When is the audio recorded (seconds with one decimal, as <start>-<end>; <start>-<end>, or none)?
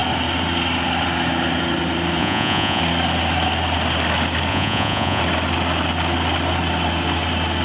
0.0-2.2; 2.8-4.5; 5.2-7.6